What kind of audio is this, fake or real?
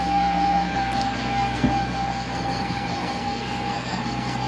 fake